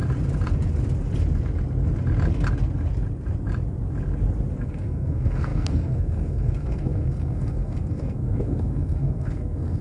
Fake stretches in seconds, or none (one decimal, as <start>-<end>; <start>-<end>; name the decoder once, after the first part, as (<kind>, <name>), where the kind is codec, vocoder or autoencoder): 4.6-9.8 (codec, SNAC)

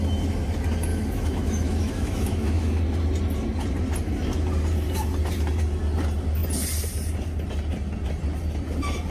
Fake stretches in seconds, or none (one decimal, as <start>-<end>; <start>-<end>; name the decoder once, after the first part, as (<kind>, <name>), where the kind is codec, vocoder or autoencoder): 0.9-2.8 (autoencoder, DAC-VAE)

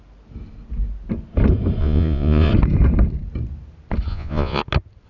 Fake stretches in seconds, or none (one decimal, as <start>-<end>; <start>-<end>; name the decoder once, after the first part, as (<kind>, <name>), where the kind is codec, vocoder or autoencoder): 1.8-2.5 (vocoder, Vocos); 4.1-4.6